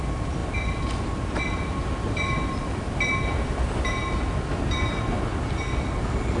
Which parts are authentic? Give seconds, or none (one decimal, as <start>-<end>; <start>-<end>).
0.0-6.4